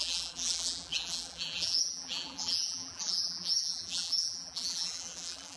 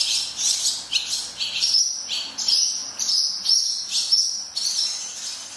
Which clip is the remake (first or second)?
first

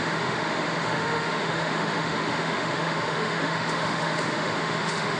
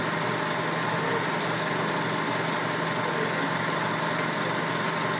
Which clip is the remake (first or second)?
first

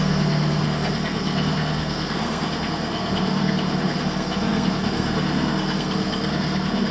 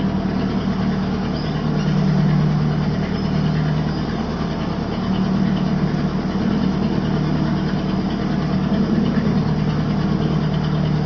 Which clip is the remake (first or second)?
first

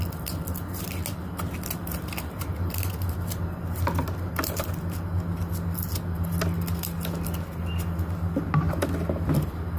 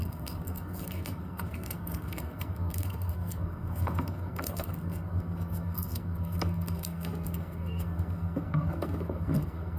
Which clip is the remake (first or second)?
second